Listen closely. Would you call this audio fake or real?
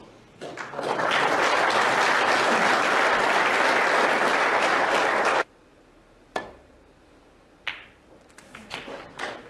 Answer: real